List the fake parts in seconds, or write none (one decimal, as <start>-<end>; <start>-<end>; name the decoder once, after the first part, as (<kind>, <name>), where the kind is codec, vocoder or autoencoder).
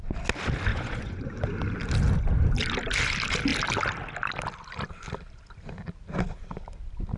0.7-1.3 (vocoder, Vocos)